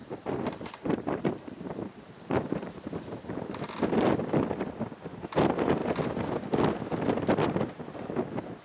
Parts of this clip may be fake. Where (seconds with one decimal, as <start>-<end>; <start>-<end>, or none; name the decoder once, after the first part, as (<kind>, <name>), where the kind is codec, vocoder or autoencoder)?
0.0-3.6 (vocoder, BigVGAN v2)